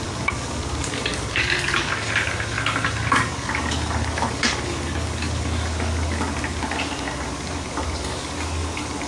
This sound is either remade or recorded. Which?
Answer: remade